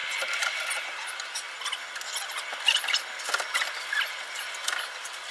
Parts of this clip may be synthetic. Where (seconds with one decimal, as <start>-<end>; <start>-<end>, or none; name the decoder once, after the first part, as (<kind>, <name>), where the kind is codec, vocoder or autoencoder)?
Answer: none